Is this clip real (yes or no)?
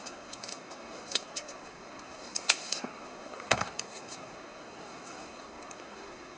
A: no